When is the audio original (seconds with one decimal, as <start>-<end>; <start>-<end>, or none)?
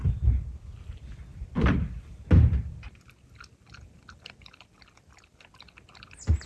0.0-6.5